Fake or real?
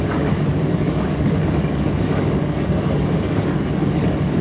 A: fake